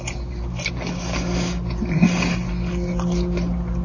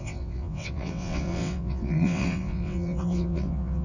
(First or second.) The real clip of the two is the first